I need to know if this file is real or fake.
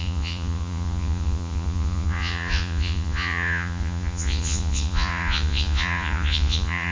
fake